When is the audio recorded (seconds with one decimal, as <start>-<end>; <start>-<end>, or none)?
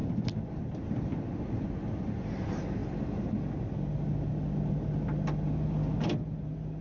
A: 0.0-6.8